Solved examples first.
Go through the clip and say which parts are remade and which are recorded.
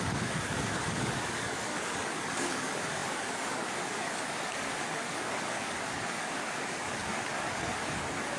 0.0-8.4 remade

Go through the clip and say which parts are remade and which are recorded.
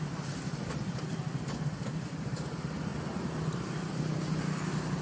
0.0-5.0 recorded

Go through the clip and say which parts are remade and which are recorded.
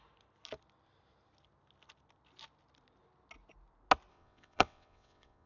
0.0-4.1 recorded; 4.1-5.5 remade